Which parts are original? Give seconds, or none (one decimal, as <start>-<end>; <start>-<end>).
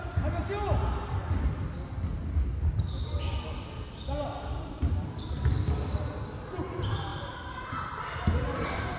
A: 0.0-9.0